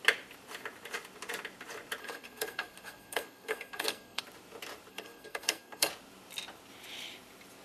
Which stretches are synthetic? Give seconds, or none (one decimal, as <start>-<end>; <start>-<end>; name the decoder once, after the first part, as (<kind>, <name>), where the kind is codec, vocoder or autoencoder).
2.0-4.2 (codec, SNAC); 4.9-5.9